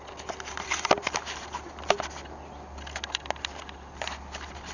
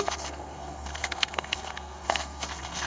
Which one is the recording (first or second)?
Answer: first